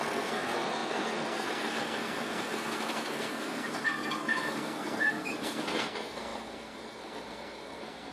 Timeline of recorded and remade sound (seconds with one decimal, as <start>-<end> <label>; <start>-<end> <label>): 0.0-8.1 remade